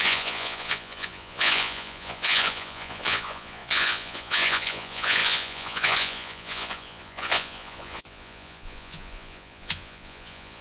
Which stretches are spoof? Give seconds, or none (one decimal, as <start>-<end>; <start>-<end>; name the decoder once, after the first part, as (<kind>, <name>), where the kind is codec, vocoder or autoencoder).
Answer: 0.0-10.6 (vocoder, Vocos)